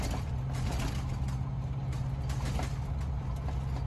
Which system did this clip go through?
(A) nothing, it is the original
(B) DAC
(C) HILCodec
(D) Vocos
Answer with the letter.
A